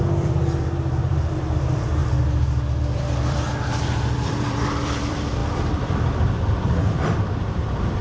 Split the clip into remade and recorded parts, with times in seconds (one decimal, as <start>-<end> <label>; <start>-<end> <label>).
0.0-2.0 remade; 2.0-2.8 recorded; 2.8-8.0 remade